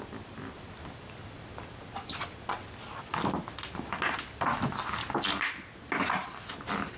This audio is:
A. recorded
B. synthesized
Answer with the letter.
A